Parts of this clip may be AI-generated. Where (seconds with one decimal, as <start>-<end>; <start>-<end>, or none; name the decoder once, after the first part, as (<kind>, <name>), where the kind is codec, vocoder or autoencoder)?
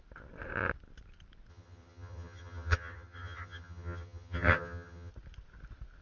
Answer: 1.5-5.1 (vocoder, HiFi-GAN)